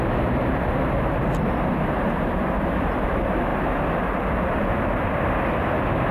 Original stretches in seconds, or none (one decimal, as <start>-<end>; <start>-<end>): 0.0-6.1